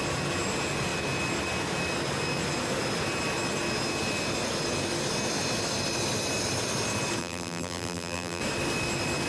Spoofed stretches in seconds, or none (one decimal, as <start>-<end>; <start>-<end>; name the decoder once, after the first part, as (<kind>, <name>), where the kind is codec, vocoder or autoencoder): 7.2-8.4 (vocoder, BigVGAN v2)